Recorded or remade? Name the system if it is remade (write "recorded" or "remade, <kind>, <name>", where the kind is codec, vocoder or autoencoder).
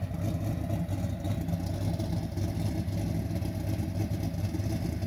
recorded